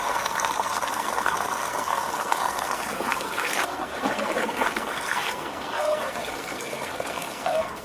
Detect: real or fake fake